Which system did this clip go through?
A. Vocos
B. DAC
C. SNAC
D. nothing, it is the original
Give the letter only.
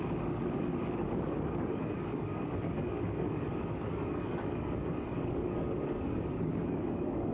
B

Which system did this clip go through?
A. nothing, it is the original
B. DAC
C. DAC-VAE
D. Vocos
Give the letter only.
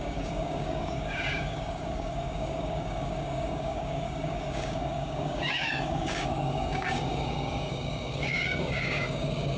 B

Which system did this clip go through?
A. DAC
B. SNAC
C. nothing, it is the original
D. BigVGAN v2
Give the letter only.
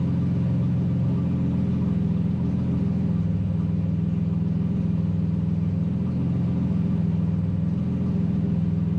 C